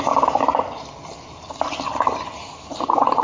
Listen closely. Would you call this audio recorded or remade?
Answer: recorded